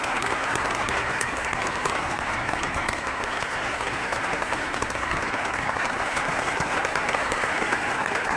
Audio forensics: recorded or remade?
remade